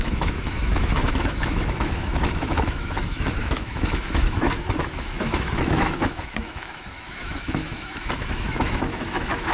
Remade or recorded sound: remade